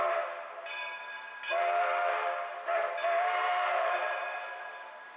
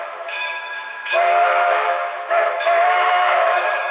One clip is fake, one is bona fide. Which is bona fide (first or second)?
first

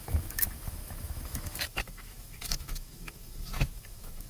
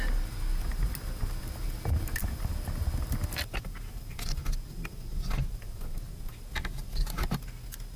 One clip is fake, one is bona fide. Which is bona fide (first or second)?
second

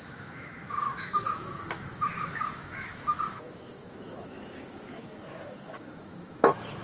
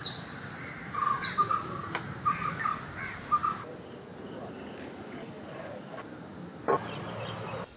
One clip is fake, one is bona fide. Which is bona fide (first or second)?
second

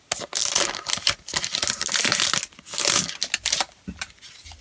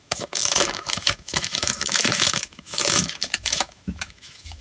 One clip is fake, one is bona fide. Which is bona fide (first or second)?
first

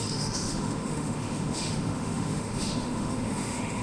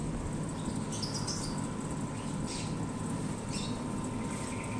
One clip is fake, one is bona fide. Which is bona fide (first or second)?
second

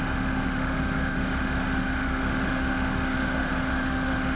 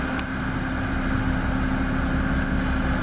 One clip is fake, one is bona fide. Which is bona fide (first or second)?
second